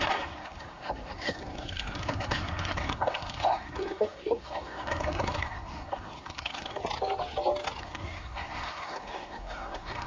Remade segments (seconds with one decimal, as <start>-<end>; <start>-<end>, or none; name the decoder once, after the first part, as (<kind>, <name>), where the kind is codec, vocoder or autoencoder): 0.0-6.8 (codec, SNAC); 7.8-10.1